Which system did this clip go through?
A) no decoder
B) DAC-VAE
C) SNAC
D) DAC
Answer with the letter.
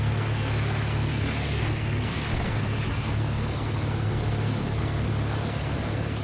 C